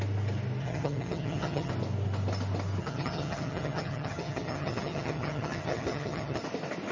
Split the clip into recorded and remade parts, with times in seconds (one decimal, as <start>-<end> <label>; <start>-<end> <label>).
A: 0.0-0.6 recorded; 0.6-1.7 remade; 1.7-2.8 recorded; 2.8-6.4 remade; 6.4-6.9 recorded

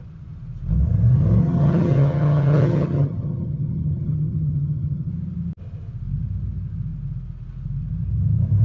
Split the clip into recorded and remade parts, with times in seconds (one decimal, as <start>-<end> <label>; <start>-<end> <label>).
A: 0.0-1.4 recorded; 1.4-5.1 remade; 5.1-8.6 recorded